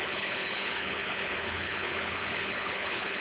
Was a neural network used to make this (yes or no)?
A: yes